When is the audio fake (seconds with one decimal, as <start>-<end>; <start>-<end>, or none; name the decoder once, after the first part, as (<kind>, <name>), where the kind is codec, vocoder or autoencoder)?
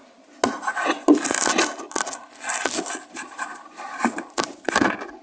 3.1-5.2 (vocoder, BigVGAN v2)